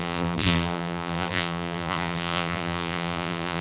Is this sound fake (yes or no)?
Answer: yes